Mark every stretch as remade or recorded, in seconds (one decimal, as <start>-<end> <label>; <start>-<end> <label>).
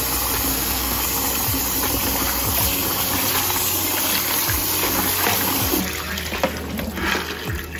0.0-0.5 recorded; 0.5-1.0 remade; 1.0-7.8 recorded